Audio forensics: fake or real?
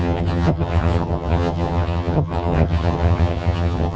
fake